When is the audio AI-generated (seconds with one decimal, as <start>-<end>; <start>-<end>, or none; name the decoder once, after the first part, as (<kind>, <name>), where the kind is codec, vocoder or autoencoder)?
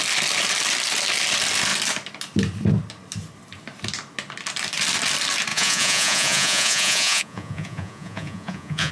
5.5-8.9 (vocoder, Vocos)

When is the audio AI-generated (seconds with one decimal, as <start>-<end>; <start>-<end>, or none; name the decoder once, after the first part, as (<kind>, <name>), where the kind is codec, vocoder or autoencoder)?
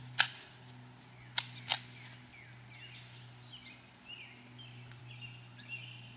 none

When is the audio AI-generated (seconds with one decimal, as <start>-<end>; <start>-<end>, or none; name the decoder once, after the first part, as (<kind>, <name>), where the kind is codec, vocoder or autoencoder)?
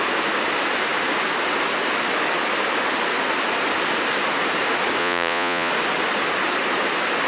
5.0-5.7 (vocoder, Vocos)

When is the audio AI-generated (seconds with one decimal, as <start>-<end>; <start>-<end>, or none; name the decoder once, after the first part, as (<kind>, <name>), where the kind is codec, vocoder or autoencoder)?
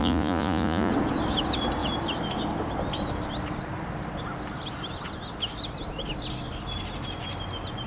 0.0-0.9 (vocoder, Vocos)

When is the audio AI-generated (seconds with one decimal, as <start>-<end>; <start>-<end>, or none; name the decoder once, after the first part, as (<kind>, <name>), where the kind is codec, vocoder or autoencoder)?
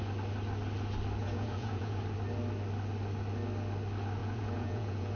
1.2-2.0 (vocoder, Vocos); 4.2-5.2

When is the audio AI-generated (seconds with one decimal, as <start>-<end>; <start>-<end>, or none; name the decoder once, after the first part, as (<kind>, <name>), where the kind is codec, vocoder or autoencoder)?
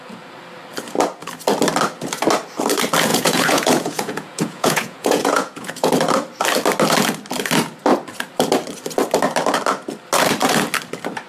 3.1-5.9 (vocoder, Vocos)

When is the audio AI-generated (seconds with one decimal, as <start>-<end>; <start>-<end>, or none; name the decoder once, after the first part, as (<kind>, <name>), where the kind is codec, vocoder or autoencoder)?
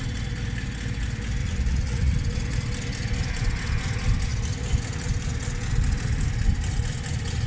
1.4-2.1 (vocoder, Vocos)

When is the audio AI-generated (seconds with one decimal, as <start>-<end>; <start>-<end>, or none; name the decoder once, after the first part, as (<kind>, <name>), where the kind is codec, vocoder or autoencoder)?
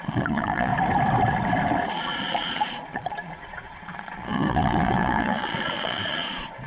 0.0-0.7 (vocoder, Vocos); 1.9-6.7